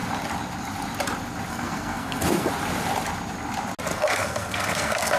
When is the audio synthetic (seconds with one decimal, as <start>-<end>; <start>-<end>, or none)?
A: 1.5-2.5; 3.9-5.2